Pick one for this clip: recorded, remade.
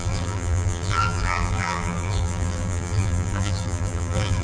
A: remade